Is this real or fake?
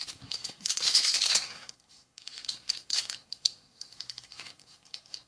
fake